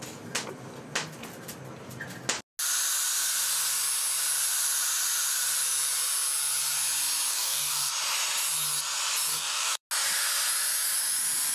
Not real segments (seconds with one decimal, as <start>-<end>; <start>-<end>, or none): 7.3-7.9; 9.3-9.8